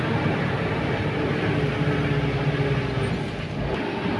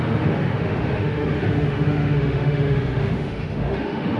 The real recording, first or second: first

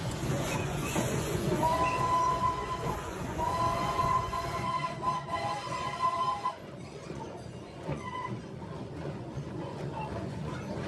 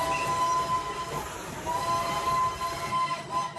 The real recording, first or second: second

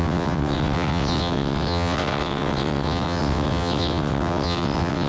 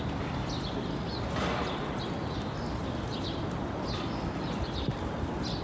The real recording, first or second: second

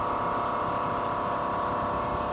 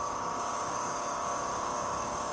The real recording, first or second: first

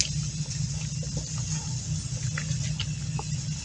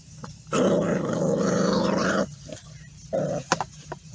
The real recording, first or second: first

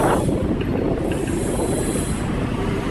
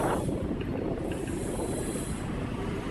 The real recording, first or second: first